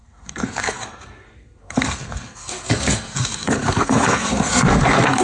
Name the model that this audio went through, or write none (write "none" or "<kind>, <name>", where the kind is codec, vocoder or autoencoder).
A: codec, SNAC